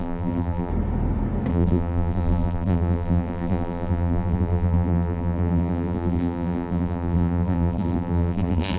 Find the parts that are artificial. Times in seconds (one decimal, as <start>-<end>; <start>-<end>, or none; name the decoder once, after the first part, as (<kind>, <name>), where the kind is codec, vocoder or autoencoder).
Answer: 0.0-0.7 (vocoder, BigVGAN v2); 1.5-8.8